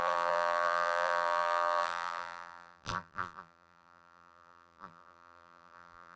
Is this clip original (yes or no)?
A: no